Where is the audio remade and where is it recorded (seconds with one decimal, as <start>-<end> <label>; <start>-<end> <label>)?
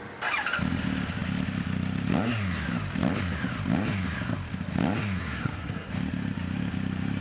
0.0-5.2 recorded; 5.2-5.9 remade; 5.9-7.2 recorded